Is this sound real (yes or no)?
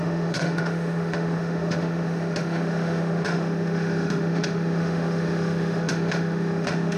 no